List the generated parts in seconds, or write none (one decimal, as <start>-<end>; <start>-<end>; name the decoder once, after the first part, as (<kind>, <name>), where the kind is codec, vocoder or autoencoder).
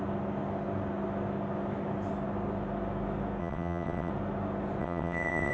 3.4-4.1 (vocoder, WaveNeXt); 4.8-5.5